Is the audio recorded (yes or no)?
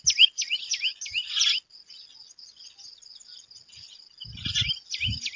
yes